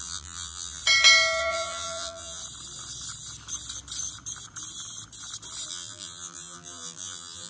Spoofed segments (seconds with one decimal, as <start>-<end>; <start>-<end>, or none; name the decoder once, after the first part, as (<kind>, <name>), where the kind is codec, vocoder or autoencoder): 0.0-0.8 (vocoder, BigVGAN v2); 1.4-2.4; 5.7-7.5